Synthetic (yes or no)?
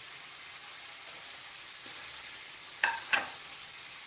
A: no